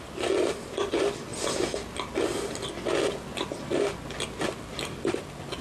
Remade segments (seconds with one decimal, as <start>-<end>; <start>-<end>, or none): none